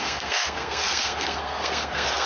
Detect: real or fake fake